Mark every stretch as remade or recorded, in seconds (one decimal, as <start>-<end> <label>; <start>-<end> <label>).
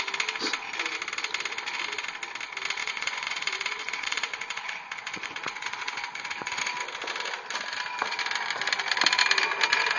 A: 0.0-2.8 recorded; 2.8-6.6 remade; 6.6-10.0 recorded